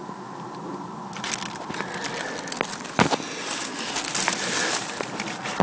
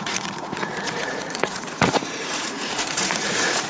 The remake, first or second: second